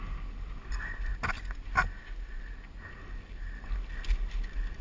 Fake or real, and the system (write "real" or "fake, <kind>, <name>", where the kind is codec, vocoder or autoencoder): real